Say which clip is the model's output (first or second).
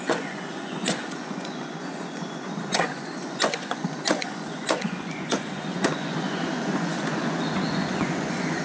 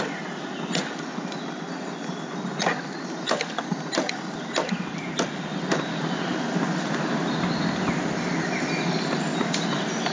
first